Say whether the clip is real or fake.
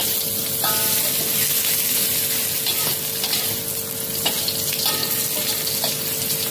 real